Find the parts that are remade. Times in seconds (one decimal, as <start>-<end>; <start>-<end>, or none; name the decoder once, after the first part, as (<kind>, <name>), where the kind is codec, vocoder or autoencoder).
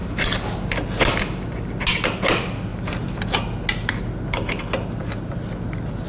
none